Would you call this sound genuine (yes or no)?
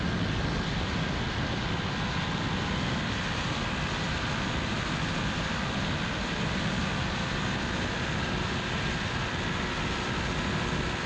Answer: yes